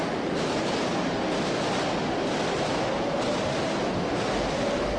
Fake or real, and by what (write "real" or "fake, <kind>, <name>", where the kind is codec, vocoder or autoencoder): real